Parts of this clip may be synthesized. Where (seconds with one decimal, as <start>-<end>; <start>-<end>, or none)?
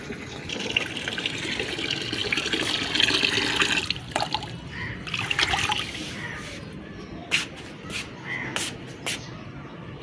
none